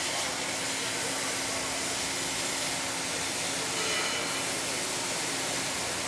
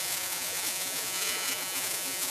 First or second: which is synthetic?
second